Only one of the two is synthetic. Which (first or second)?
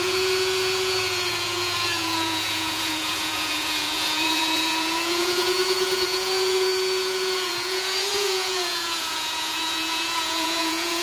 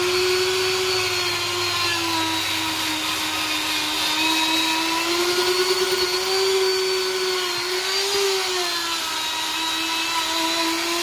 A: first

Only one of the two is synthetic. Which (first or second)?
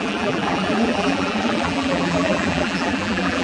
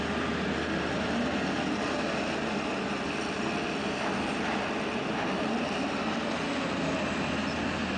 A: first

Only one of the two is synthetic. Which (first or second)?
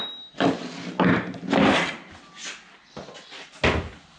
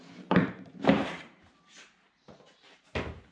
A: second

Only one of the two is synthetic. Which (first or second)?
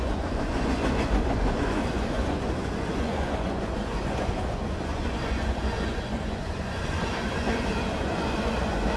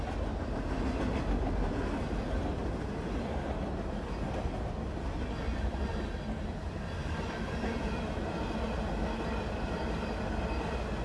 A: first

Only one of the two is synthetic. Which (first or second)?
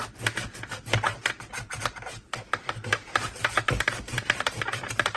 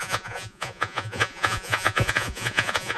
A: second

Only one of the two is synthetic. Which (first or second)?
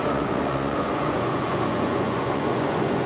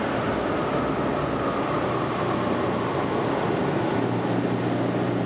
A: first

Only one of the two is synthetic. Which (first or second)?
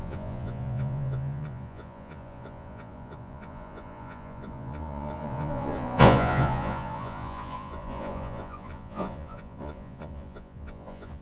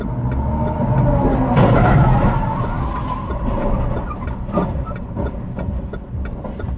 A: first